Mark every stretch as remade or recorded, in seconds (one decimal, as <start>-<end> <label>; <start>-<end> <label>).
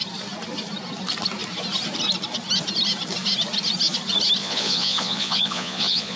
0.0-4.4 recorded; 4.4-6.2 remade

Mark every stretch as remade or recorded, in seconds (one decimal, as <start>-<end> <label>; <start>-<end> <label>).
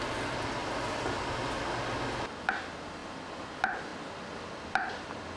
0.0-0.6 recorded; 0.6-1.4 remade; 1.4-3.0 recorded; 3.0-3.5 remade; 3.5-5.4 recorded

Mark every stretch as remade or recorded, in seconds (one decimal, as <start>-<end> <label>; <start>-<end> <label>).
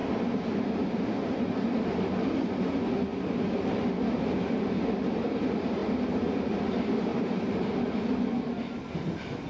0.0-7.1 recorded; 7.1-7.7 remade; 7.7-9.5 recorded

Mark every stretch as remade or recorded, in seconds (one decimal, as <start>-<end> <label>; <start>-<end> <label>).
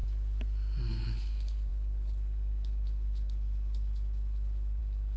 0.0-0.9 recorded; 0.9-5.2 remade